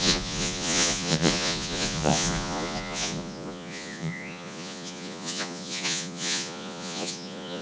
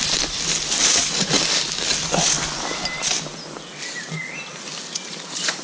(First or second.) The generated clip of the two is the first